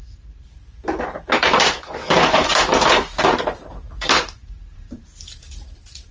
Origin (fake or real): fake